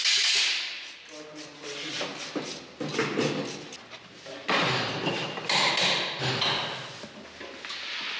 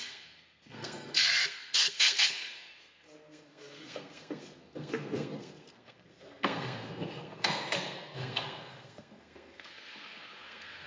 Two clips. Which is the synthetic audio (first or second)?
second